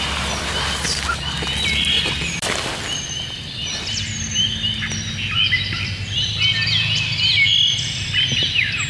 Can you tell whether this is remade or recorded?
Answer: recorded